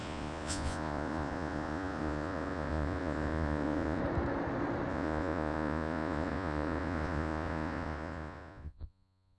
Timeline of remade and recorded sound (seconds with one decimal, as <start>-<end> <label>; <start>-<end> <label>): 0.0-4.0 remade; 4.0-4.9 recorded; 4.9-9.4 remade